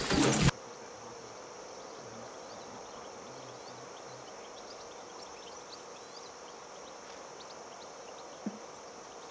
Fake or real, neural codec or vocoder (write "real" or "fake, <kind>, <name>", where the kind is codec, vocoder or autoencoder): real